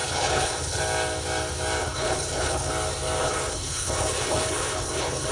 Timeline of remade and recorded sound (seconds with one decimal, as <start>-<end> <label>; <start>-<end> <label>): 0.0-0.8 remade; 0.8-1.8 recorded; 1.8-2.7 remade; 2.7-3.2 recorded; 3.2-5.3 remade